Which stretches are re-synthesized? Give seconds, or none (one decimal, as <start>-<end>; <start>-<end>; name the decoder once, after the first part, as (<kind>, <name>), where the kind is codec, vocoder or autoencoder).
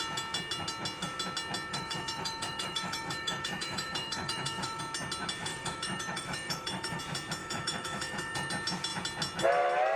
1.7-4.8 (autoencoder, DAC-VAE); 5.5-7.0; 7.4-8.5